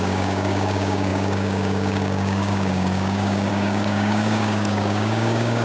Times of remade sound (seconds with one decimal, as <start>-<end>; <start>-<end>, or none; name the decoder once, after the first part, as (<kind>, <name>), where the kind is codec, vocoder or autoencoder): 0.0-5.6 (codec, DAC)